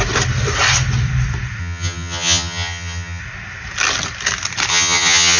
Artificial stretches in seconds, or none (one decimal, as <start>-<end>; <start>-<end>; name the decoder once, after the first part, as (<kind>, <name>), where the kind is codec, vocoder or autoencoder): 1.6-3.2 (vocoder, HiFi-GAN); 4.7-5.4

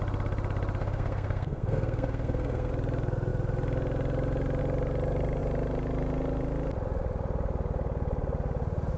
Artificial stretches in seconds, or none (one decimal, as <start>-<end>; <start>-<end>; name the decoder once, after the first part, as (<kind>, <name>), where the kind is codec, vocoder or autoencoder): 0.8-2.7 (codec, SNAC)

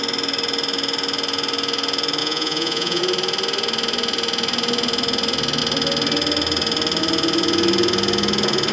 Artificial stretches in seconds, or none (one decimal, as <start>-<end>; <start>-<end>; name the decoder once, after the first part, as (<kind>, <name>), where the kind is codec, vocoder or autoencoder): 2.2-3.0 (vocoder, Vocos)